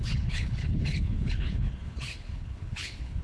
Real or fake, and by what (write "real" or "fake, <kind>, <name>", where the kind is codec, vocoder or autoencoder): fake, codec, HILCodec